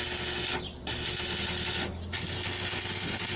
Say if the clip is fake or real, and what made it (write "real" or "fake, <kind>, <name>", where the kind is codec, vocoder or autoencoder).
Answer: real